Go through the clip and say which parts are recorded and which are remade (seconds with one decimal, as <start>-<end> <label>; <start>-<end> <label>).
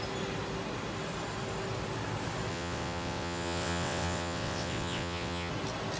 0.0-2.5 recorded; 2.5-5.5 remade; 5.5-6.0 recorded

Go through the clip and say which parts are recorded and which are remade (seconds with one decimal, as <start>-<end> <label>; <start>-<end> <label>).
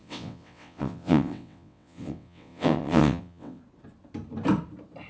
0.0-3.6 remade; 3.6-5.1 recorded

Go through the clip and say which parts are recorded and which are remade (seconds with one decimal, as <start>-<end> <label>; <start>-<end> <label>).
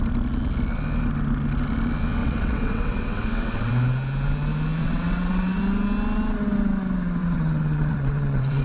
0.0-2.2 recorded; 2.2-3.7 remade; 3.7-4.8 recorded; 4.8-5.6 remade; 5.6-7.2 recorded; 7.2-8.6 remade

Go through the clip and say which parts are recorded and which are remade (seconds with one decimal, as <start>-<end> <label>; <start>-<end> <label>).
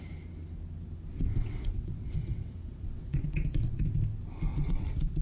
0.0-1.1 recorded; 1.1-3.8 remade; 3.8-4.5 recorded; 4.5-5.2 remade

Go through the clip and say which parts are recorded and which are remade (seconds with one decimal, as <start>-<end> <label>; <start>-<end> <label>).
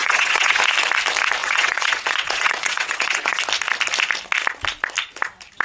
0.0-0.6 remade; 0.6-1.4 recorded; 1.4-3.4 remade; 3.4-5.6 recorded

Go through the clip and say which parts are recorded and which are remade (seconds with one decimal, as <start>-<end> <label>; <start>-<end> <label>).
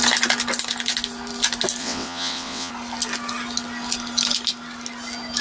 0.0-1.8 recorded; 1.8-2.7 remade; 2.7-5.4 recorded